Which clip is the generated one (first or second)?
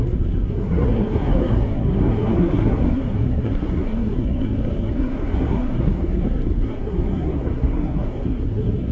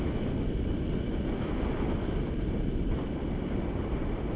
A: first